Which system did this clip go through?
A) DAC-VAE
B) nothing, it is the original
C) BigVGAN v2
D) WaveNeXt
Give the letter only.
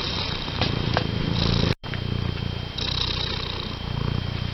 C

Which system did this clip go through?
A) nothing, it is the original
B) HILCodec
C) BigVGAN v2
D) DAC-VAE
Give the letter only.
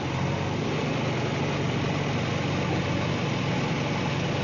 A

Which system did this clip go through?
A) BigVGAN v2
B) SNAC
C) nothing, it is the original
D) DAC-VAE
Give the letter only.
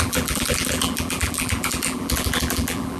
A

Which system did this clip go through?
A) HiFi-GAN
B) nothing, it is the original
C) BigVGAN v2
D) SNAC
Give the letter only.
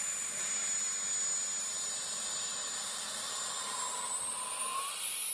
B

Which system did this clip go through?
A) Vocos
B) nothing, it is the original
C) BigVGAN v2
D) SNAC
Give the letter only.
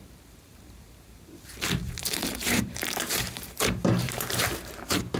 C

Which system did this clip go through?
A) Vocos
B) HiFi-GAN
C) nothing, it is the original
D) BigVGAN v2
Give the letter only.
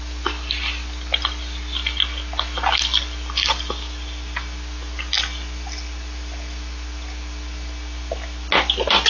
C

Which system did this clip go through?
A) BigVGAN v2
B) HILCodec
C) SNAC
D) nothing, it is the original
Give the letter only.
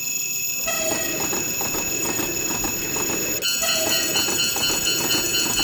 D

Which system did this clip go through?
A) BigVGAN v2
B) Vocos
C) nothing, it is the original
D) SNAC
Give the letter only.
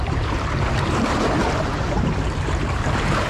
A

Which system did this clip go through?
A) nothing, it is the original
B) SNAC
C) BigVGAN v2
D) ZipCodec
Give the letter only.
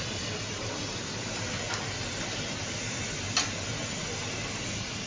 A